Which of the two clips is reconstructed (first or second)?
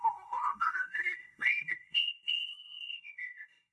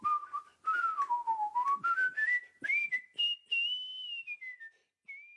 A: first